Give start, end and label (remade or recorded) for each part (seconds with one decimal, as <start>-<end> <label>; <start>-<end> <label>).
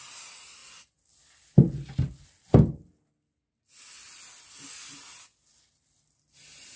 0.0-6.8 recorded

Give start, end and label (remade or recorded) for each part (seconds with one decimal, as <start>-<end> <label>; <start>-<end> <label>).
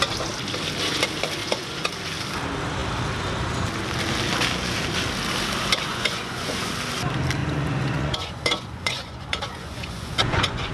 0.0-1.4 recorded; 1.4-1.9 remade; 1.9-5.9 recorded; 5.9-6.7 remade; 6.7-7.4 recorded; 7.4-10.7 remade